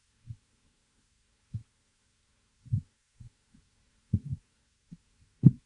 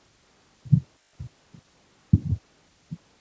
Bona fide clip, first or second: second